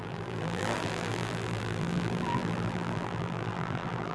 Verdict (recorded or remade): remade